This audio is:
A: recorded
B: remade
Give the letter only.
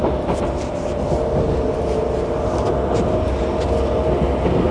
A